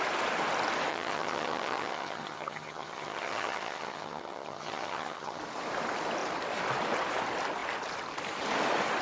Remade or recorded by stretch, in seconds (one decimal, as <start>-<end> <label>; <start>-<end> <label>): 0.0-0.9 recorded; 0.9-5.4 remade; 5.4-9.0 recorded